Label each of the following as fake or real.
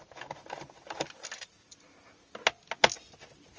real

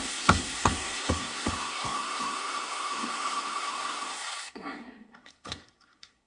fake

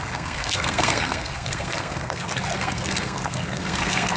fake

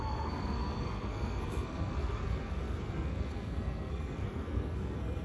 fake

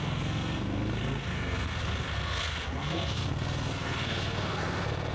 fake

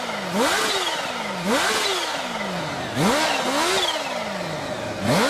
real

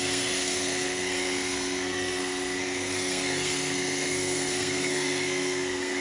fake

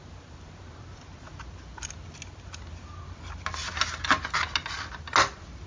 real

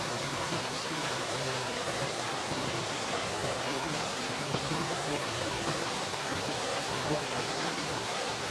fake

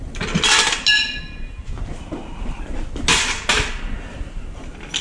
real